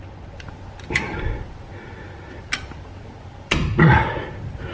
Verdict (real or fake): real